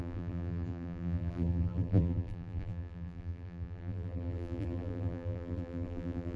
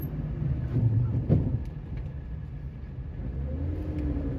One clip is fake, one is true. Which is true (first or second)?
second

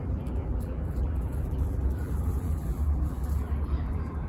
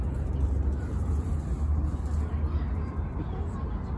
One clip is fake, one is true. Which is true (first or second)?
second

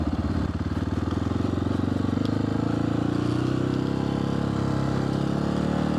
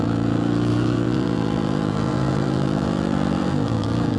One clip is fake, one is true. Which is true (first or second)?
first